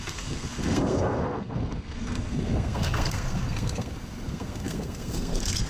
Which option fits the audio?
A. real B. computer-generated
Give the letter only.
B